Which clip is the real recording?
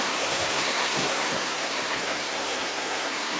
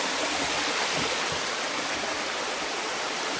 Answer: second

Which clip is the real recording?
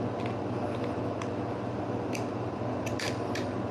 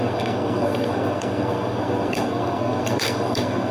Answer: first